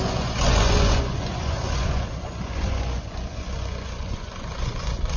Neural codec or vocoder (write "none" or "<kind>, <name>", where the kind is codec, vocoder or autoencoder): vocoder, Vocos